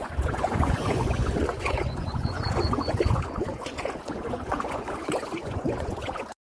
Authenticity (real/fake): fake